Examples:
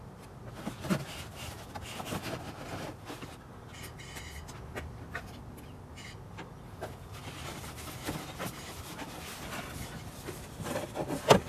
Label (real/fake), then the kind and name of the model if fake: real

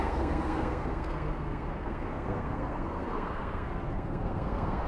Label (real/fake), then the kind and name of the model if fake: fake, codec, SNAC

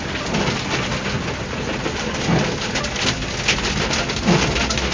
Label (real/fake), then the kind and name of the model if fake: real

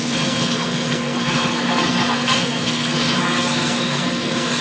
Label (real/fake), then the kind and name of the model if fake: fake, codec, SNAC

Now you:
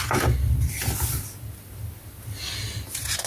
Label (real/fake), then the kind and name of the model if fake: real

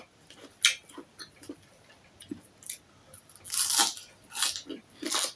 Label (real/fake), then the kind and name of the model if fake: real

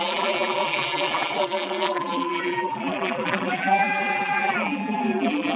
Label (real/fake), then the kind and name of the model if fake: fake, vocoder, BigVGAN v2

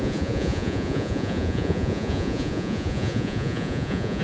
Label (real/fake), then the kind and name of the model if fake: fake, vocoder, Vocos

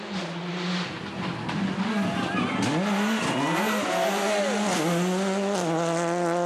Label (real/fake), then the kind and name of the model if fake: real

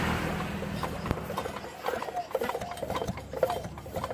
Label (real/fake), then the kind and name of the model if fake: fake, vocoder, BigVGAN v2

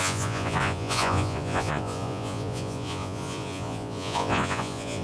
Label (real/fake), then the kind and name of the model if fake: fake, vocoder, Vocos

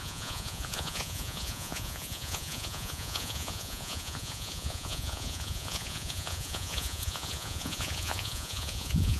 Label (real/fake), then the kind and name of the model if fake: fake, vocoder, Vocos